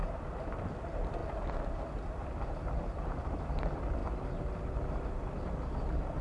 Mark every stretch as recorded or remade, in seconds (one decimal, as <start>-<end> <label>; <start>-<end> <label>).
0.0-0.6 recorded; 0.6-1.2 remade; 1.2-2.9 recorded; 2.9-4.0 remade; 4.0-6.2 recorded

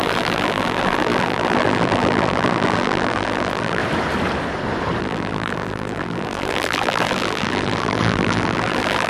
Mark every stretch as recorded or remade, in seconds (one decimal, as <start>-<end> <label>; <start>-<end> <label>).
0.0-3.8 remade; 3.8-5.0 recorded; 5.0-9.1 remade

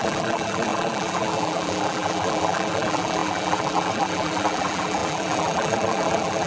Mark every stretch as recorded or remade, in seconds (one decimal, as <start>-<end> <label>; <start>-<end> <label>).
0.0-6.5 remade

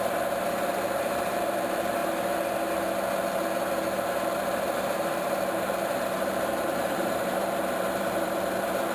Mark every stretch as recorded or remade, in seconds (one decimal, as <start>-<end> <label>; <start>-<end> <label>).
0.0-2.0 remade; 2.0-4.1 recorded; 4.1-8.9 remade

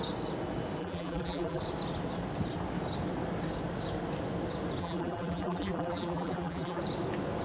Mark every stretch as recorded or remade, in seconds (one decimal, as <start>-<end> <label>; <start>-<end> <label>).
0.0-0.8 recorded; 0.8-1.6 remade; 1.6-4.8 recorded; 4.8-6.8 remade; 6.8-7.4 recorded

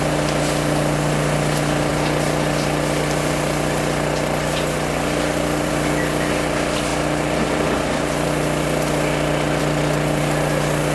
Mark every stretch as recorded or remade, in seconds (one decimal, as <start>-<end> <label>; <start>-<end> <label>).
0.0-1.9 recorded; 1.9-5.7 remade; 5.7-10.9 recorded

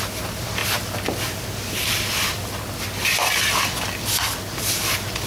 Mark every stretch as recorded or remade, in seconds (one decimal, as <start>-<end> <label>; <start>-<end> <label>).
0.0-5.3 recorded

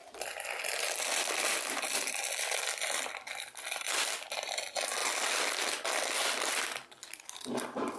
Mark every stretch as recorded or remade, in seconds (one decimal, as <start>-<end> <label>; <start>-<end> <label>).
0.0-4.5 remade; 4.5-7.0 recorded; 7.0-8.0 remade